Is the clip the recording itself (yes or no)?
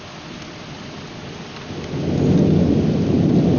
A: yes